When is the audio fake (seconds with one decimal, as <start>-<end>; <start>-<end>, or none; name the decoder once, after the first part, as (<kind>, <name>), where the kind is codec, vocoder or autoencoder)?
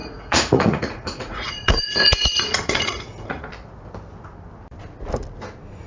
0.0-3.5 (vocoder, Vocos)